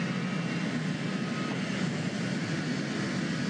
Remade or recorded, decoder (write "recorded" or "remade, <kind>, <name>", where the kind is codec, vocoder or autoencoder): recorded